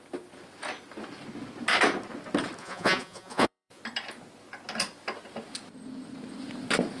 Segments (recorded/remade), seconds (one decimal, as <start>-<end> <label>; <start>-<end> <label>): 0.0-2.6 recorded; 2.6-3.8 remade; 3.8-7.0 recorded